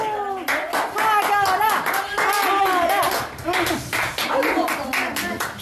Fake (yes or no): no